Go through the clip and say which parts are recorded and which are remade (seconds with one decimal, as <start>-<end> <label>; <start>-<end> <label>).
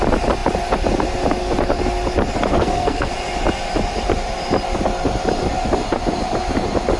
0.0-2.5 recorded; 2.5-3.1 remade; 3.1-7.0 recorded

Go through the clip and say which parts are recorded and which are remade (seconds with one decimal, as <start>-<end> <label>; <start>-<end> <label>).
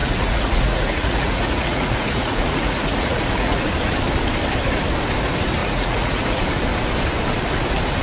0.0-3.7 remade; 3.7-5.6 recorded; 5.6-6.4 remade; 6.4-8.0 recorded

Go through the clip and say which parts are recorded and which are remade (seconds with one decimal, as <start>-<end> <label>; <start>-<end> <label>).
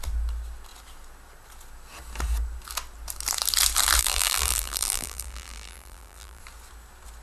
0.0-4.0 recorded; 4.0-6.4 remade; 6.4-7.2 recorded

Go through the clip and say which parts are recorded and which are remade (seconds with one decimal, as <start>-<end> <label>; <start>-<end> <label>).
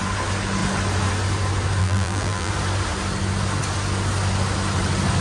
0.0-1.8 recorded; 1.8-2.5 remade; 2.5-5.2 recorded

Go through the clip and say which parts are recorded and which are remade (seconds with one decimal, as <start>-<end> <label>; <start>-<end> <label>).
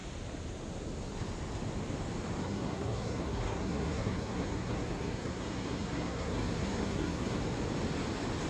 0.0-2.4 recorded; 2.4-7.4 remade; 7.4-8.5 recorded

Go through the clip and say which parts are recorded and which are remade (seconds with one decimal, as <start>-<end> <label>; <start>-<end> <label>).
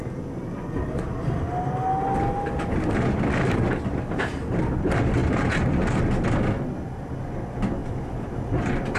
0.0-9.0 recorded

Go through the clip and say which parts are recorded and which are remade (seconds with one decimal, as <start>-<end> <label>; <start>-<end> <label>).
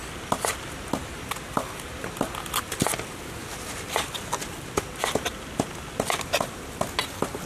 0.0-7.5 recorded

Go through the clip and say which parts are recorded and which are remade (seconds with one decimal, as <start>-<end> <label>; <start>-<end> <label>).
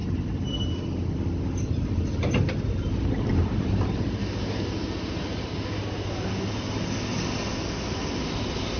0.0-8.8 recorded